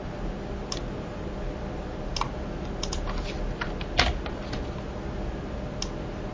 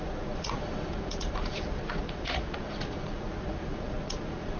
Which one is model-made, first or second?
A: second